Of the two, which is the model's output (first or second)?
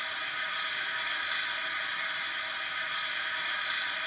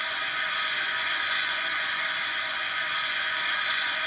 second